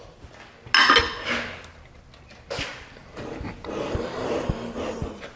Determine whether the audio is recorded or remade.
recorded